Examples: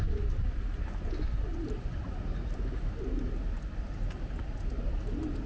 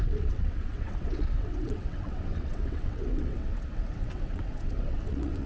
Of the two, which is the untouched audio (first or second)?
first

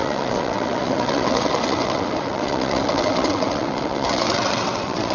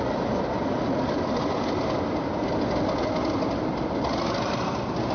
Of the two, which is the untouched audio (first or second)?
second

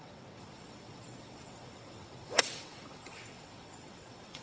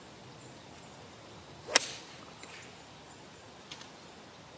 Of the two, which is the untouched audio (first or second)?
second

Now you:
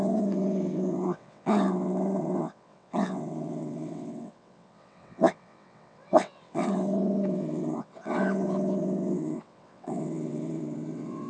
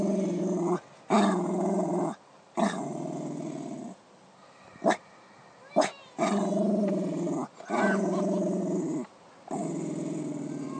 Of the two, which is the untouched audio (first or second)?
second